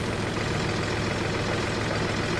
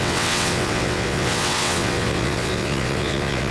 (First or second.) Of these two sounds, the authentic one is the first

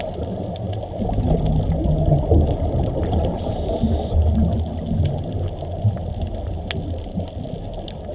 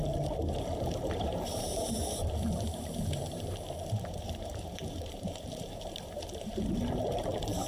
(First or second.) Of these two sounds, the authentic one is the first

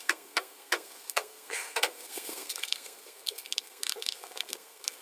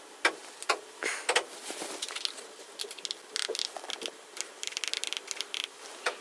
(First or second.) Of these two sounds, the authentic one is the second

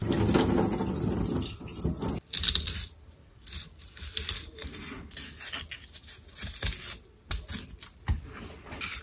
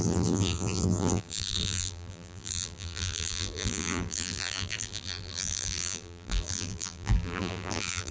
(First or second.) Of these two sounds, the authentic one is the first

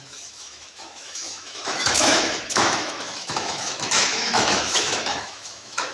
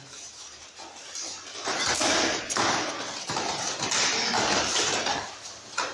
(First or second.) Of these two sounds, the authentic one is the second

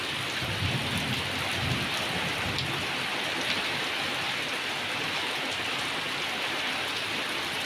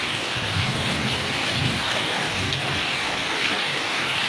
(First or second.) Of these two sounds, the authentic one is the first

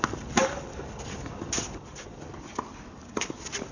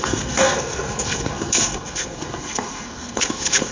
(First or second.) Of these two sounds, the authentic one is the first